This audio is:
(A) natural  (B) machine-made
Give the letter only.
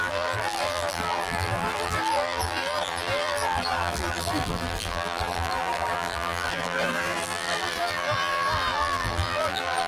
B